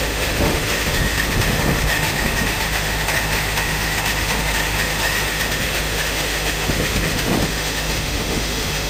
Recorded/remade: remade